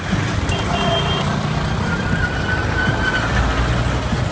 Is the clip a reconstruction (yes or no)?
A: no